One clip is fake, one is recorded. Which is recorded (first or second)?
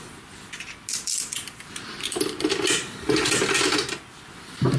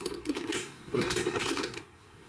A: first